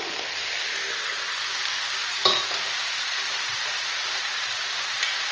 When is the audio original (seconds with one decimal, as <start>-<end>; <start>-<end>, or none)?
0.0-2.0